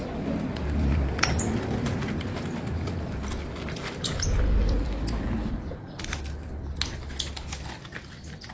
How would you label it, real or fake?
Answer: real